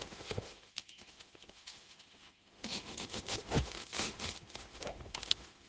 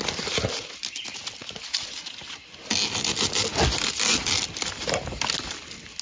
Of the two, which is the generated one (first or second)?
first